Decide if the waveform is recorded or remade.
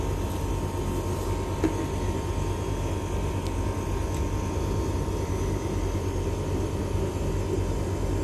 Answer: recorded